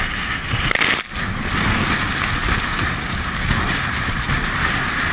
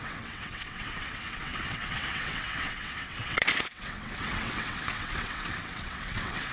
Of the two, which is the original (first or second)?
first